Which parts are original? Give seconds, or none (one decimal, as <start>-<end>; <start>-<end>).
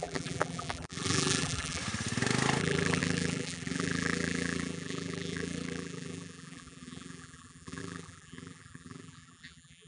1.8-2.6